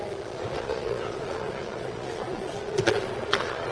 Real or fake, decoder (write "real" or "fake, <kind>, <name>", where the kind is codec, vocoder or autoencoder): fake, vocoder, Vocos